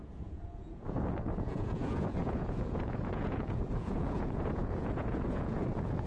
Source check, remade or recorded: remade